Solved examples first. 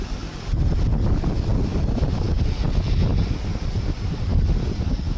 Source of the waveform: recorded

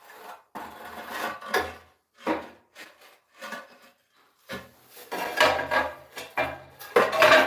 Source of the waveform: recorded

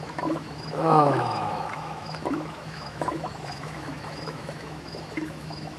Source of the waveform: remade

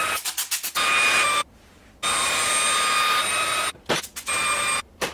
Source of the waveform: recorded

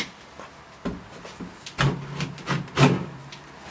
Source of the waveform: recorded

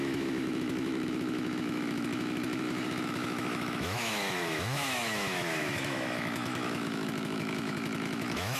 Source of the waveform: remade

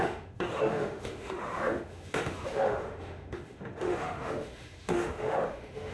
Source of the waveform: remade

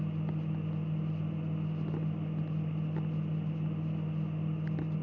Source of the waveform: recorded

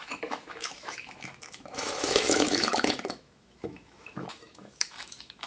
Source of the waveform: remade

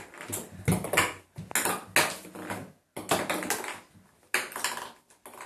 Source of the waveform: recorded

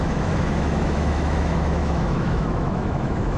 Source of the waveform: remade